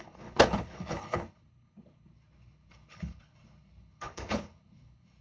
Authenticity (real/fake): fake